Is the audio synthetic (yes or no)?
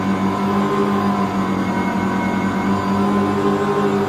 no